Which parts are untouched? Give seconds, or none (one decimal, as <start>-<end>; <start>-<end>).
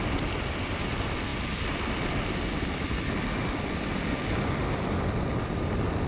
0.0-6.1